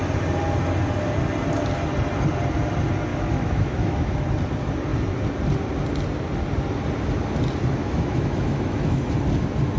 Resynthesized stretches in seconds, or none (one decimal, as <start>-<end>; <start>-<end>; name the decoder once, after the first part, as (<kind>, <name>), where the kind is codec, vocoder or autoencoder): 3.1-4.2 (autoencoder, DAC-VAE); 7.8-9.1